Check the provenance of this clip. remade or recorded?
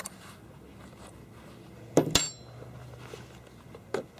recorded